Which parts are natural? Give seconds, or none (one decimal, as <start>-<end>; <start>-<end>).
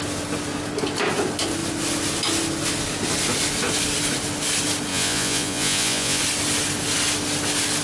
0.0-4.9; 6.2-7.8